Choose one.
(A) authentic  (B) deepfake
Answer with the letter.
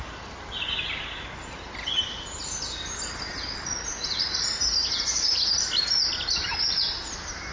A